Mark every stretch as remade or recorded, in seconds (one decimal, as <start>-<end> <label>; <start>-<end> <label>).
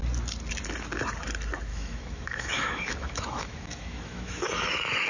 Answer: 0.0-1.7 recorded; 1.7-5.1 remade